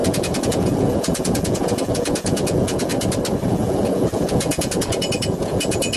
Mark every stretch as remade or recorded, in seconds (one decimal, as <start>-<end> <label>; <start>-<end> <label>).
0.0-2.9 remade; 2.9-3.5 recorded; 3.5-6.0 remade